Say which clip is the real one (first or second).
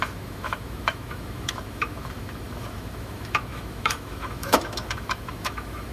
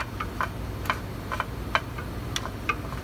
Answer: second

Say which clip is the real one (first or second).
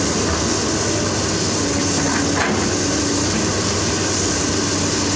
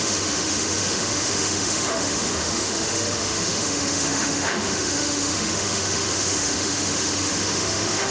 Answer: first